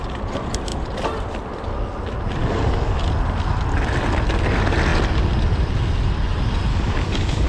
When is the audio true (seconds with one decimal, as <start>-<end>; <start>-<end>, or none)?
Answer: 0.0-2.4; 3.0-6.7